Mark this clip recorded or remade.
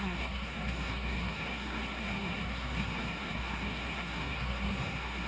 remade